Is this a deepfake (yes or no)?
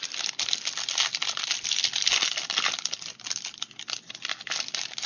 no